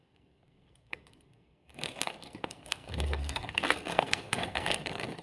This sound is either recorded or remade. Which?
remade